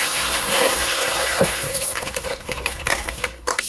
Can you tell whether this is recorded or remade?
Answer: remade